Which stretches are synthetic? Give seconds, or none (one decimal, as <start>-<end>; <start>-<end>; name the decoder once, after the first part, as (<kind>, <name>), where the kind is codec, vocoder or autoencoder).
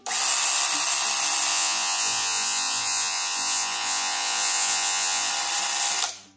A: 1.5-5.3 (vocoder, Vocos)